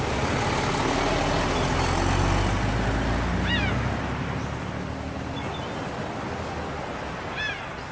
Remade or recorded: recorded